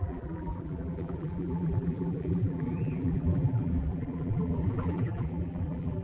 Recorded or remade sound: remade